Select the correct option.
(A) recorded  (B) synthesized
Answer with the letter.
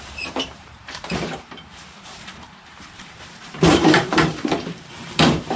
B